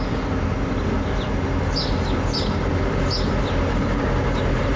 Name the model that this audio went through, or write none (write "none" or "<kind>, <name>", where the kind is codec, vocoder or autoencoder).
none